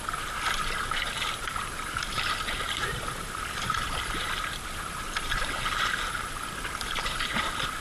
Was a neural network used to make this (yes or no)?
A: yes